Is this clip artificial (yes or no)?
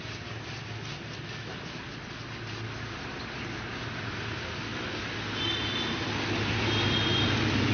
no